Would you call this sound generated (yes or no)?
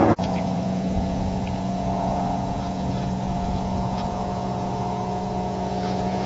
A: yes